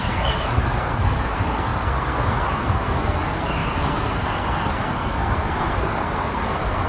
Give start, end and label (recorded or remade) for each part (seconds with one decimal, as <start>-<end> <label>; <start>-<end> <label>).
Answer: 0.0-6.9 remade